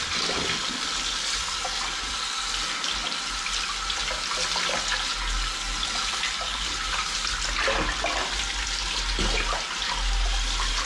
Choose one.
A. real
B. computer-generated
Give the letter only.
A